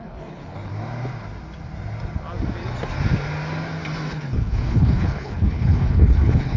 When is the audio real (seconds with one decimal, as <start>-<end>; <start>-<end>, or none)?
0.7-4.1